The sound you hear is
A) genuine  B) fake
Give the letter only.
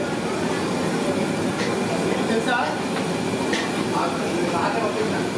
A